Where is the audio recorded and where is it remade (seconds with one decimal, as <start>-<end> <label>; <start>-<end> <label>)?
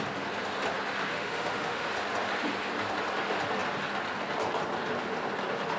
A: 0.0-1.1 recorded; 1.1-1.9 remade; 1.9-5.8 recorded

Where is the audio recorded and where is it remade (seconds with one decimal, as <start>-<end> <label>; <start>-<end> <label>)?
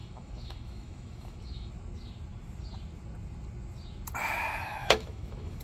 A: 0.0-1.7 remade; 1.7-4.8 recorded; 4.8-5.6 remade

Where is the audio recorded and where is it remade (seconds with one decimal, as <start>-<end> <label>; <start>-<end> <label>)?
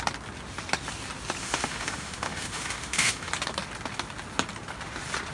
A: 0.0-1.4 recorded; 1.4-3.3 remade; 3.3-5.3 recorded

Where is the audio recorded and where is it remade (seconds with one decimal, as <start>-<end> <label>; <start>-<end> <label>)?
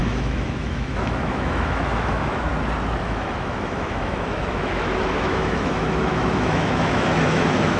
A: 0.0-2.5 remade; 2.5-3.0 recorded; 3.0-7.8 remade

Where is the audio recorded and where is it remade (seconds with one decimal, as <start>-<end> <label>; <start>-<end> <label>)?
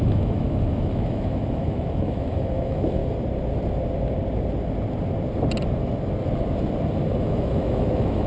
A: 0.0-3.0 remade; 3.0-7.2 recorded; 7.2-8.3 remade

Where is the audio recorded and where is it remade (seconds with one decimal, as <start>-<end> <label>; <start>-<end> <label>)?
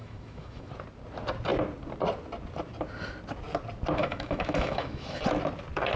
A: 0.0-0.7 remade; 0.7-4.0 recorded; 4.0-5.2 remade; 5.2-6.0 recorded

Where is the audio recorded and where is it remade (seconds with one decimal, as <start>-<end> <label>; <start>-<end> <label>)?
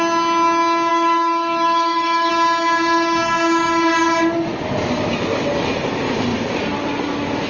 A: 0.0-0.9 recorded; 0.9-2.3 remade; 2.3-7.5 recorded